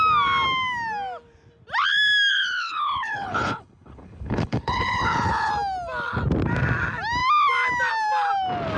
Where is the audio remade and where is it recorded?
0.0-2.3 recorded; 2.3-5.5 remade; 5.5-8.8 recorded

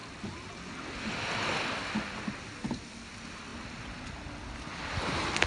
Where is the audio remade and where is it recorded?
0.0-5.5 recorded

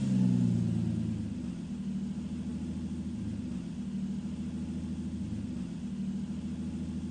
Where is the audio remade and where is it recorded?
0.0-7.1 recorded

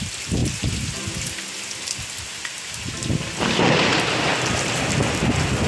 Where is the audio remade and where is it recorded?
0.0-5.7 recorded

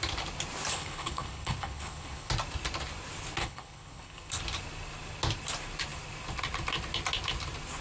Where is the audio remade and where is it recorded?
0.0-0.7 recorded; 0.7-2.3 remade; 2.3-3.4 recorded; 3.4-4.3 remade; 4.3-7.8 recorded

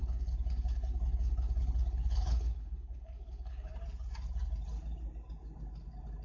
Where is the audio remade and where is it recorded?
0.0-3.7 remade; 3.7-6.2 recorded

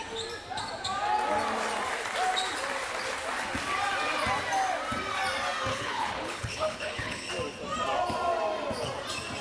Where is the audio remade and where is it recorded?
0.0-5.7 recorded; 5.7-7.3 remade; 7.3-9.4 recorded